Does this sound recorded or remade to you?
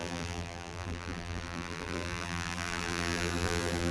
remade